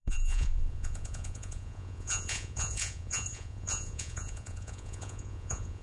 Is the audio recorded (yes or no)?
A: no